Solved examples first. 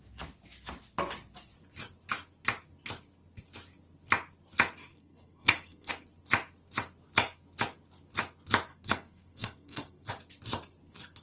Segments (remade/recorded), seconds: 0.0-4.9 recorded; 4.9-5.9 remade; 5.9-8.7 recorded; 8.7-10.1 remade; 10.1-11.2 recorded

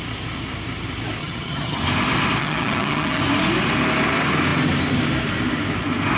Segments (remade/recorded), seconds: 0.0-1.2 recorded; 1.2-1.8 remade; 1.8-2.4 recorded; 2.4-3.2 remade; 3.2-6.2 recorded